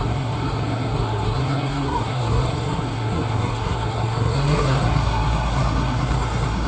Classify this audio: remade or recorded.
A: remade